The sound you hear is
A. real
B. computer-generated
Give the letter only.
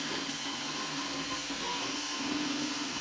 B